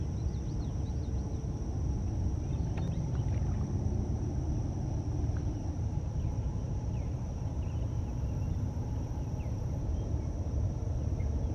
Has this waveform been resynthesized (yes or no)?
no